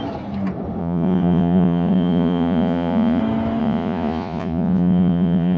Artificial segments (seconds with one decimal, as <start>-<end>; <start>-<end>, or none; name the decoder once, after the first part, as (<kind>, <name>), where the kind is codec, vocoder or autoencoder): 0.8-3.2 (vocoder, Vocos); 3.6-5.6